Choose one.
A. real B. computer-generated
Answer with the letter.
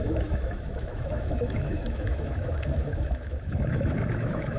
B